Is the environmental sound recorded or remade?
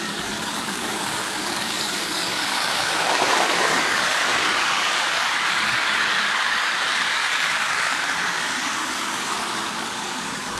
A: remade